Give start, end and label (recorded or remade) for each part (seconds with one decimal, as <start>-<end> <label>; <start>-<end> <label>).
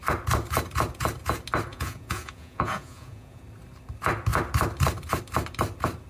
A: 0.0-1.7 recorded; 1.7-3.4 remade; 3.4-6.1 recorded